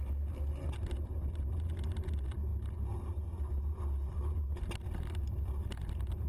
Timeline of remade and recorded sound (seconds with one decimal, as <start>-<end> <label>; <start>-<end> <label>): 0.0-6.3 recorded